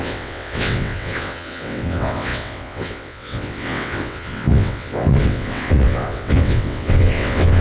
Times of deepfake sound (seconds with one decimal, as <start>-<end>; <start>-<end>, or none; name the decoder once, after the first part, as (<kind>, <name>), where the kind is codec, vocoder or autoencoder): 0.0-7.6 (vocoder, WaveNeXt)